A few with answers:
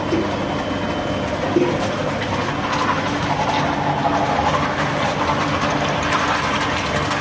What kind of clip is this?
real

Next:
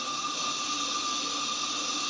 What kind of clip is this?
real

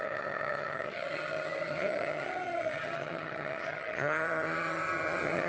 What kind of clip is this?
fake